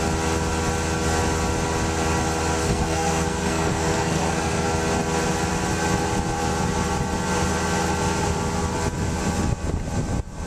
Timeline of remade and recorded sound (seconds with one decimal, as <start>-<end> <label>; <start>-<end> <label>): 0.0-2.6 recorded; 2.6-4.7 remade; 4.7-10.5 recorded